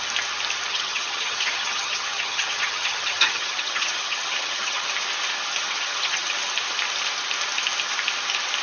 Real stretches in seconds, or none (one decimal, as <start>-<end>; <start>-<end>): 0.0-0.7; 4.9-5.6; 6.3-8.6